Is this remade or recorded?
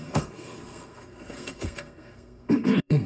remade